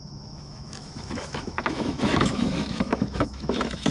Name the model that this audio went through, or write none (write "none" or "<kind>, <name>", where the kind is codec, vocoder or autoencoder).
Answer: autoencoder, DAC-VAE